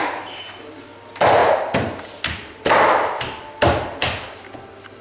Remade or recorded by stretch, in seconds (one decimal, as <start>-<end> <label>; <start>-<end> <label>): 0.0-5.0 recorded